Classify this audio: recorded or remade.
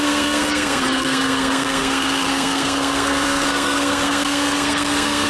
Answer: remade